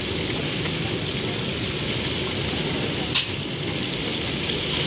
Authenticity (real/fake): real